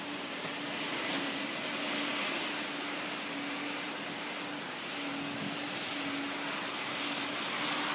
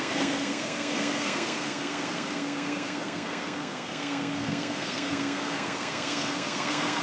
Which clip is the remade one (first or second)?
second